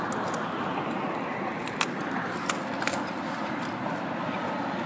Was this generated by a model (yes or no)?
no